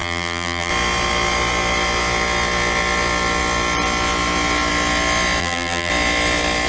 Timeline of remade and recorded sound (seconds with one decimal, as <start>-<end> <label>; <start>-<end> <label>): 0.0-0.7 remade; 0.7-5.4 recorded; 5.4-5.9 remade; 5.9-6.7 recorded